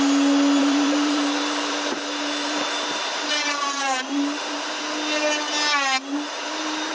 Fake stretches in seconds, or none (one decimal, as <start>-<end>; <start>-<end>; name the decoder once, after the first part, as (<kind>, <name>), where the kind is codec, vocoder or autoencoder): 0.6-4.7 (vocoder, BigVGAN v2); 6.1-6.9